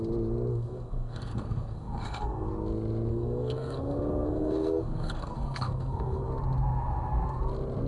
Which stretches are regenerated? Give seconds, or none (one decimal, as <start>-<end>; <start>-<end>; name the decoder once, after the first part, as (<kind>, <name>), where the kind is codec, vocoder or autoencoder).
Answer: 0.5-2.5 (codec, SNAC); 3.1-6.3